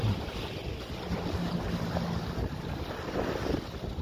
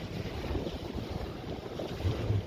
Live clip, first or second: first